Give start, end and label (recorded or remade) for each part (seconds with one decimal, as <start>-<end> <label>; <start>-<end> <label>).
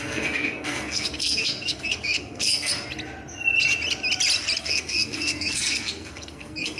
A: 0.0-2.7 remade; 2.7-4.6 recorded; 4.6-6.8 remade